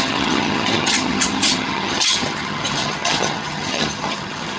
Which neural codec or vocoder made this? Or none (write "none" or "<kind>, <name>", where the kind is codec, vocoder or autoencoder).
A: vocoder, HiFi-GAN